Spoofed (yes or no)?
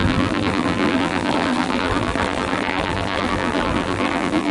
yes